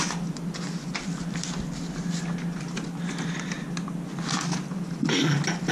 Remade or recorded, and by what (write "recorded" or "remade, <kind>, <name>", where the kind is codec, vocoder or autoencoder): recorded